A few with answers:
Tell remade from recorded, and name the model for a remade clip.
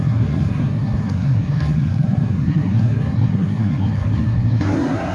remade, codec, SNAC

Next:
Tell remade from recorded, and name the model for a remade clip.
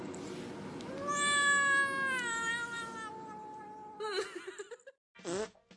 recorded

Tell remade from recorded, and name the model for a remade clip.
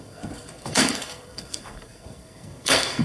remade, codec, SNAC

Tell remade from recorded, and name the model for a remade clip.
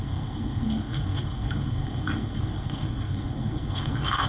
remade, codec, SNAC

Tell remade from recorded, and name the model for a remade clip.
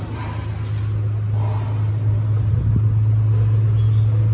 recorded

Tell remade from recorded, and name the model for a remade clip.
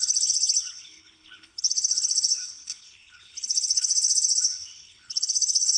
remade, codec, HILCodec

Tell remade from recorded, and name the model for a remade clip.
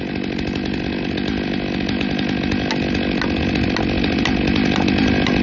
recorded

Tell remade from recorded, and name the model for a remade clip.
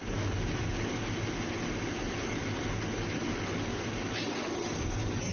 recorded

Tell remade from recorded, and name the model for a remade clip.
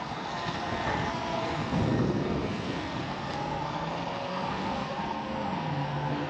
remade, codec, SNAC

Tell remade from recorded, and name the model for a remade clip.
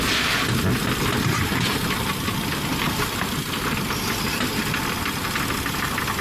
recorded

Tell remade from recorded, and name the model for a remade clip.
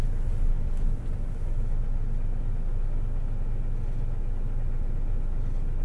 recorded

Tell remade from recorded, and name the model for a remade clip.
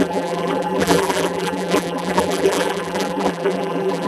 remade, vocoder, BigVGAN v2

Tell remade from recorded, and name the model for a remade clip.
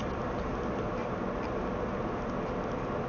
recorded